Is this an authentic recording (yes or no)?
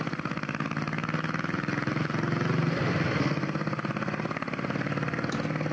yes